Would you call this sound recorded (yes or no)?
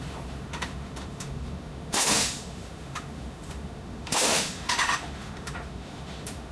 no